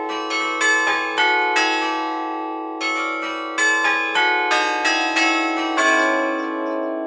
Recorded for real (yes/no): yes